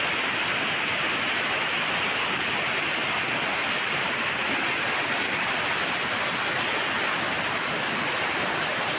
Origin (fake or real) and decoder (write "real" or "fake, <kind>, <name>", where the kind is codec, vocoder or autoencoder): real